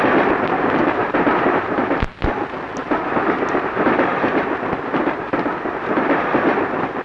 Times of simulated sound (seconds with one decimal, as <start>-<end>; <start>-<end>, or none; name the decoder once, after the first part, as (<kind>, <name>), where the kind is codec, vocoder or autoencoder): 1.0-2.0 (vocoder, BigVGAN v2); 2.8-7.0